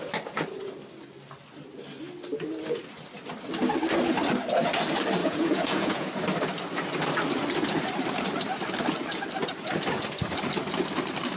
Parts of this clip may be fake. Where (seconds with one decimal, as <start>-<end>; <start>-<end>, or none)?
5.2-6.1

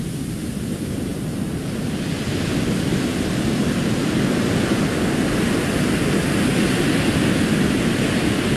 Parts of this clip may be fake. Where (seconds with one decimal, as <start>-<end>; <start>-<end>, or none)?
none

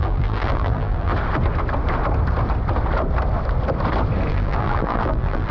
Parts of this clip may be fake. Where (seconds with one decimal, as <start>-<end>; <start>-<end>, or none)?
0.0-1.1; 4.3-5.5